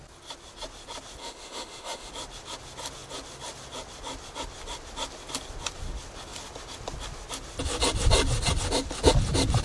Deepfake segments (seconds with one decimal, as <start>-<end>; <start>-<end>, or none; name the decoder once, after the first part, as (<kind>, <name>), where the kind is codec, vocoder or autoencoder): 1.2-2.1 (autoencoder, DAC-VAE)